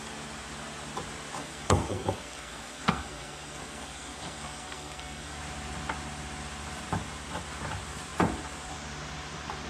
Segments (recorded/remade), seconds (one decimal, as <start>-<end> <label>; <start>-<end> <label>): 0.0-1.4 recorded; 1.4-5.4 remade; 5.4-9.7 recorded